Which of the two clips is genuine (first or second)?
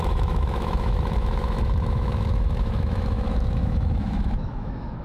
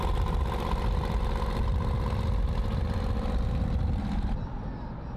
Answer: second